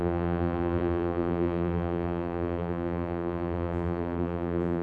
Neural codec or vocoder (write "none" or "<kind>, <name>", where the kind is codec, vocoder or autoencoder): vocoder, BigVGAN v2